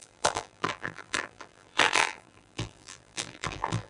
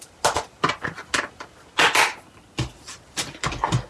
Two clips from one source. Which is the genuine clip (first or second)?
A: second